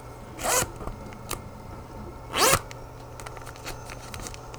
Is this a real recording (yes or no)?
yes